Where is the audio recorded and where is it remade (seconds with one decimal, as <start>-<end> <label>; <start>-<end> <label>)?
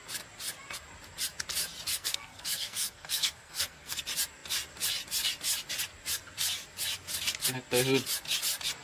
0.0-1.9 recorded; 1.9-4.0 remade; 4.0-8.8 recorded